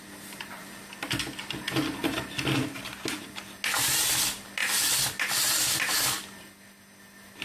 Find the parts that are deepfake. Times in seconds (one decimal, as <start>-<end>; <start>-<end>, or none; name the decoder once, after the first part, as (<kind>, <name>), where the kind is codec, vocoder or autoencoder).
none